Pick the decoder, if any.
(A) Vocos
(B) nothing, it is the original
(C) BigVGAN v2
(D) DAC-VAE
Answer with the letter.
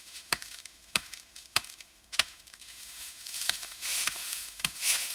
D